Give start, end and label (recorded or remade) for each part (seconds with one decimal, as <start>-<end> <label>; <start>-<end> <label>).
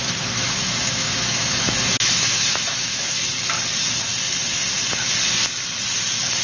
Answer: 0.0-3.2 remade; 3.2-6.4 recorded